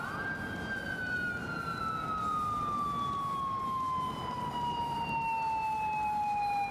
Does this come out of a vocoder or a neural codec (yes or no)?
no